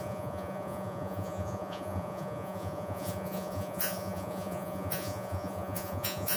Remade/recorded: remade